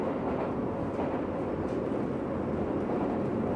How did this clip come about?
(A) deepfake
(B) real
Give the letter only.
B